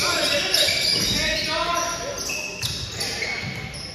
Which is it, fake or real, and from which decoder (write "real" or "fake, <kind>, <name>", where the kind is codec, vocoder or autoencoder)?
real